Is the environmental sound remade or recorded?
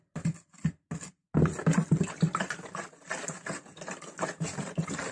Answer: recorded